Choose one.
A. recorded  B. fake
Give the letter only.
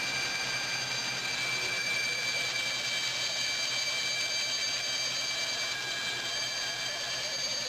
A